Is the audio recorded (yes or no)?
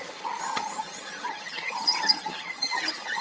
no